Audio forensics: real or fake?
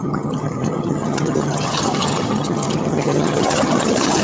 fake